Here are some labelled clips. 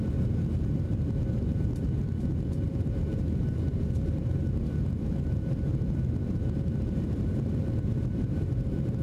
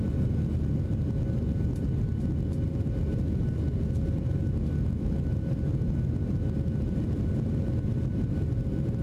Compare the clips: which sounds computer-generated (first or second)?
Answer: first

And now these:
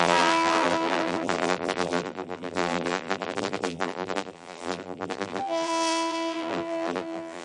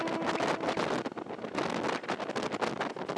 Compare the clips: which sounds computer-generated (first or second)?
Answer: first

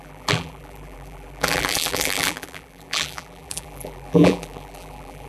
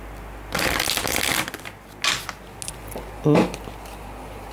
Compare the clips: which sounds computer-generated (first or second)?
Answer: first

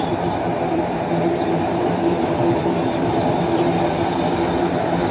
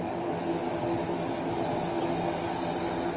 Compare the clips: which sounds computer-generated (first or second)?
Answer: first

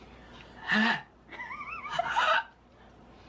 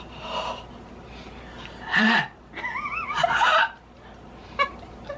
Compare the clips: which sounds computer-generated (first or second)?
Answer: second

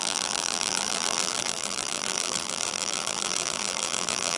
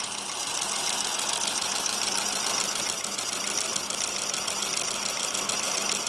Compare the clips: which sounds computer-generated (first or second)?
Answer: first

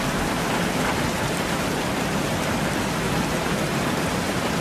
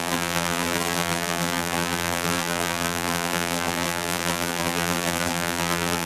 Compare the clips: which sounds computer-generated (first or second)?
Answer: second